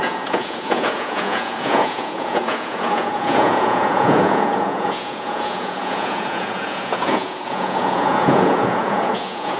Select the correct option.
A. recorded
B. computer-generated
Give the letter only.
B